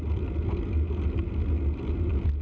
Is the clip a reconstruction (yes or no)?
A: no